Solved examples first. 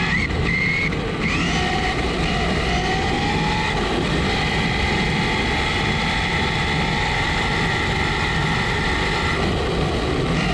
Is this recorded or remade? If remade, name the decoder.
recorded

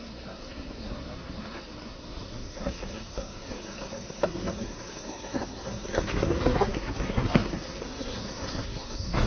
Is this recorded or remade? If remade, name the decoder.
remade, codec, SNAC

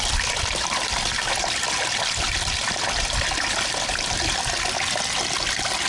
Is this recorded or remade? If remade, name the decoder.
recorded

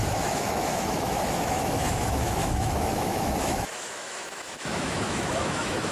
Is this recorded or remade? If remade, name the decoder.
remade, autoencoder, DAC-VAE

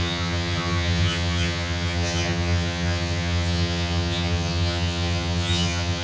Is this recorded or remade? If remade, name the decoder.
remade, vocoder, HiFi-GAN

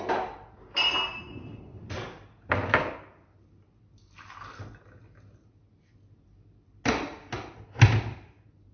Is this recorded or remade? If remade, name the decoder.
recorded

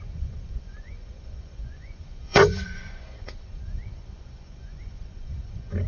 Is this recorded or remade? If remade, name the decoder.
remade, vocoder, Vocos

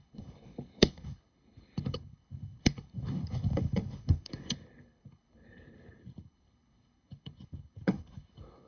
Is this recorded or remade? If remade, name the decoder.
remade, codec, HILCodec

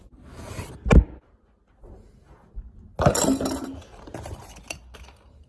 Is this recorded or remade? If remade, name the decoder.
recorded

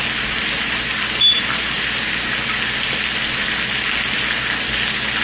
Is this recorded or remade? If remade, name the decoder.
recorded